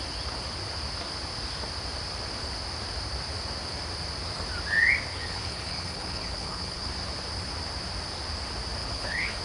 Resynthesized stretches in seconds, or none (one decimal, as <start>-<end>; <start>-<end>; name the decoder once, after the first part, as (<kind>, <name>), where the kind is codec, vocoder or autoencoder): 5.1-6.9 (codec, HILCodec); 8.8-9.4